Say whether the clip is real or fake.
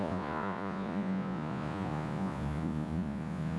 fake